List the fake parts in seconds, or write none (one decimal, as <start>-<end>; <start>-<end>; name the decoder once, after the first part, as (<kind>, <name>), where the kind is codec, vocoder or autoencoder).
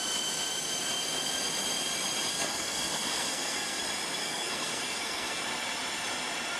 2.3-3.8 (codec, SNAC); 4.2-5.4